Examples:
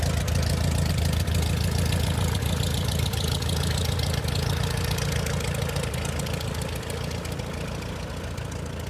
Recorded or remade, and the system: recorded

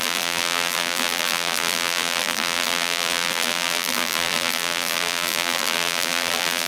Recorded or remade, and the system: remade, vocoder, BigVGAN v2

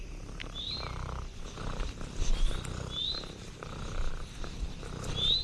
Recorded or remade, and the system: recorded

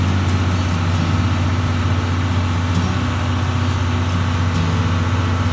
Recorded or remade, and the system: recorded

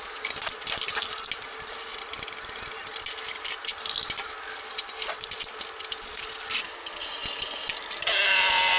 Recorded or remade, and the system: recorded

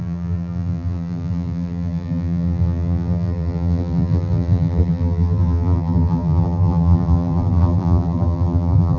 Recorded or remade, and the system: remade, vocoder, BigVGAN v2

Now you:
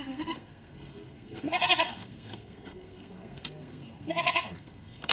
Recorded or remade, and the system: remade, codec, SNAC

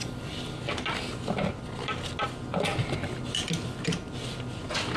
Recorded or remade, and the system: recorded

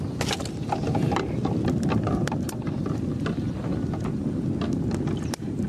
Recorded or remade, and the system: recorded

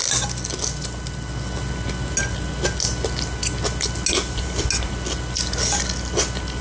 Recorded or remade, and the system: recorded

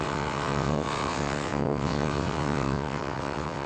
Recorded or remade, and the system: remade, vocoder, WaveNeXt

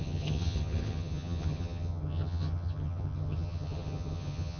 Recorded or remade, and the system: remade, vocoder, HiFi-GAN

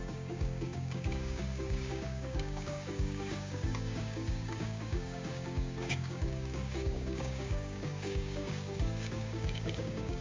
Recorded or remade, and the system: remade, codec, DAC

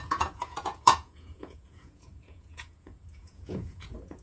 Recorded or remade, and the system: remade, vocoder, Vocos